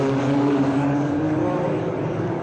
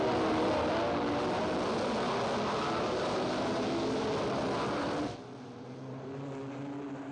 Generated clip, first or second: first